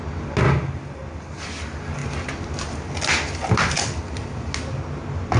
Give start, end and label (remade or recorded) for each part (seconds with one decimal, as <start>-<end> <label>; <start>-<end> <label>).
0.0-5.4 recorded